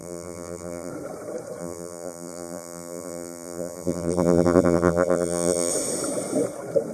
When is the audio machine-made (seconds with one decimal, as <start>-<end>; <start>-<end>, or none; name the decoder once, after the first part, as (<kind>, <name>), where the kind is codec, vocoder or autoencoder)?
0.0-0.9 (vocoder, BigVGAN v2); 1.6-5.7